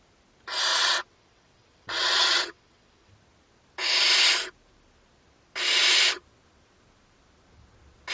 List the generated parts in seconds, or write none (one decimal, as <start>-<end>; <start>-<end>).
0.7-3.1